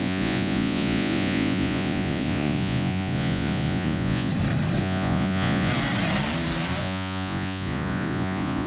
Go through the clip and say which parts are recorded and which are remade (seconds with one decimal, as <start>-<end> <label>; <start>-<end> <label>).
0.0-4.3 remade; 4.3-4.8 recorded; 4.8-5.7 remade; 5.7-6.8 recorded; 6.8-8.7 remade